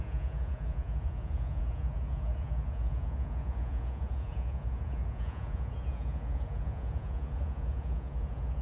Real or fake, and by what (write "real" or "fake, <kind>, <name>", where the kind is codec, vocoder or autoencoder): fake, vocoder, Vocos